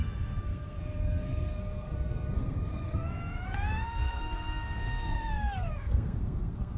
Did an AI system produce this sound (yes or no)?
yes